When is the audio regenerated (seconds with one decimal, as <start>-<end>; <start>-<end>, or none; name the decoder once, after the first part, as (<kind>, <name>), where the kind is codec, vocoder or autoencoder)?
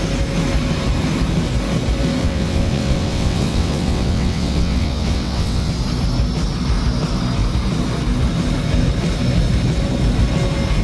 2.2-5.7 (vocoder, WaveNeXt)